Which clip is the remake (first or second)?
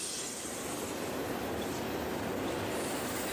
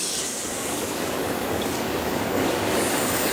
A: second